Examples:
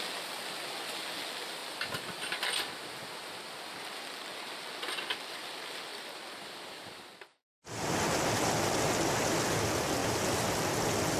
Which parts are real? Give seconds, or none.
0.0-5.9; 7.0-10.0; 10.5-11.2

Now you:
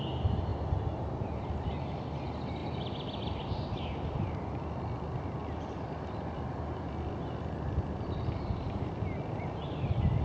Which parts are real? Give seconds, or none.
0.0-2.6; 4.5-5.4; 8.9-10.2

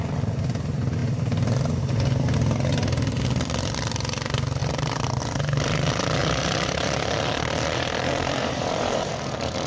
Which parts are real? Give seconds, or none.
0.0-1.0; 1.8-4.6; 5.2-6.2; 9.1-9.7

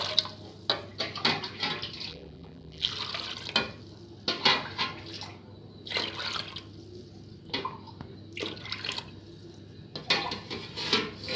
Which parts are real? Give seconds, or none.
0.0-2.1; 2.9-11.4

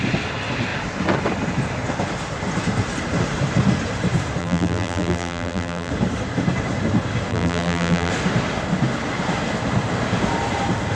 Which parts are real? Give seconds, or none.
0.0-4.4; 5.9-7.3; 8.1-11.0

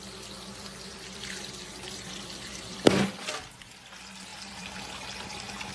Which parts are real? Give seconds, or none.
0.0-0.9; 3.6-4.3; 4.8-5.7

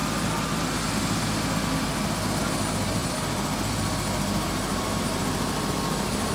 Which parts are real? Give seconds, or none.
0.0-6.3